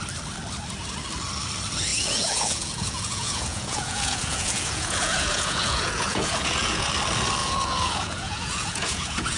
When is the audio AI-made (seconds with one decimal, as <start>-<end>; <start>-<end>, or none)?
1.9-6.9; 7.4-9.4